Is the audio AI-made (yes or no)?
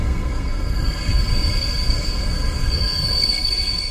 yes